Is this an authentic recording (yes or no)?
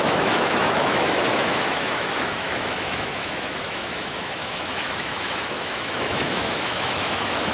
no